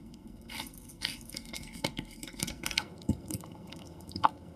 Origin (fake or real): fake